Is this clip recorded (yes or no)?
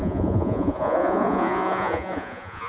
no